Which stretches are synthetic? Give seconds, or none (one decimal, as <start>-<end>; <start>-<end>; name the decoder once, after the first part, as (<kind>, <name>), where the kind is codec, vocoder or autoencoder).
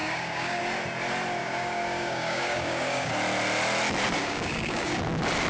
0.0-0.6 (codec, DAC); 1.4-3.1; 4.2-5.0